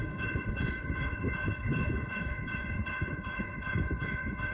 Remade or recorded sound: remade